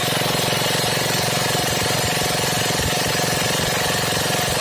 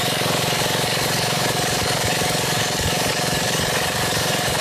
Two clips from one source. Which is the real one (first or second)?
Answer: first